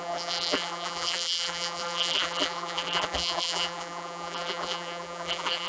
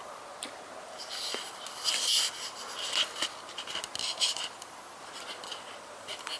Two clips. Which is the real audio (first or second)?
second